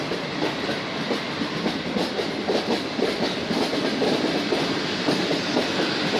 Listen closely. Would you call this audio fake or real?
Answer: real